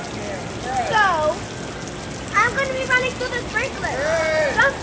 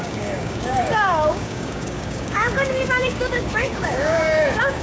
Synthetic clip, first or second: second